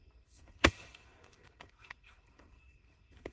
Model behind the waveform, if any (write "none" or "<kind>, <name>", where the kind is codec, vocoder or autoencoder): codec, SNAC